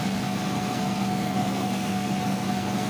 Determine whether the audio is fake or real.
fake